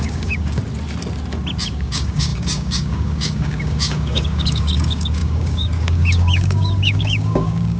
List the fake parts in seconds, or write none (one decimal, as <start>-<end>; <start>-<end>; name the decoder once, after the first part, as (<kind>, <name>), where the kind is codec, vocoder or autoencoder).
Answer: 0.0-0.6 (codec, DAC); 1.7-7.8